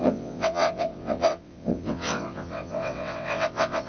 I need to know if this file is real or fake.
fake